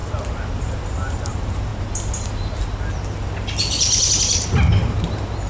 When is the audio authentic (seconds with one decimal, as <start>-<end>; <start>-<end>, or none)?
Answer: 0.0-0.5; 1.7-5.0